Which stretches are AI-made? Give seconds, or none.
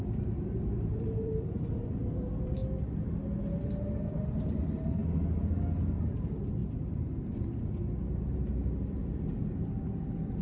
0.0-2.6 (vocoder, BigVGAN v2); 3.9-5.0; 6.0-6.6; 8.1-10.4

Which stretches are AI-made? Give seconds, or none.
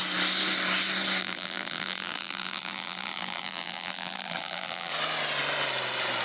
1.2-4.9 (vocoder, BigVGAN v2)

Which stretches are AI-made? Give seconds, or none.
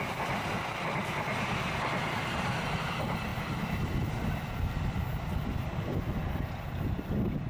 none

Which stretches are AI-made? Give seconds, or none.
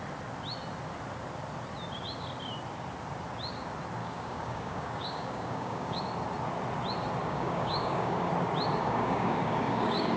4.0-6.0 (codec, DAC); 7.2-8.3; 8.8-10.2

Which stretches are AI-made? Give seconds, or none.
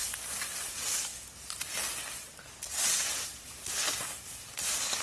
none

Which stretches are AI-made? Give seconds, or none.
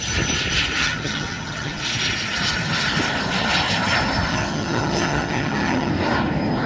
0.8-1.8 (vocoder, HiFi-GAN); 4.3-5.9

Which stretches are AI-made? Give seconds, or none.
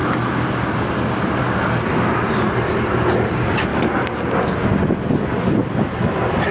none